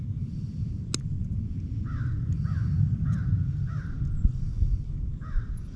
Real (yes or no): yes